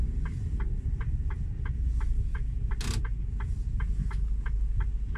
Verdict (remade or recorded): recorded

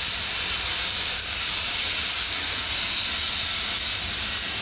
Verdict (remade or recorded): recorded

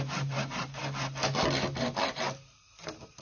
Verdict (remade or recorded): recorded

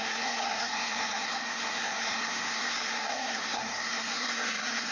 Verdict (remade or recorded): remade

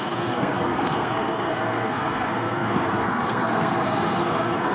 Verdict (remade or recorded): remade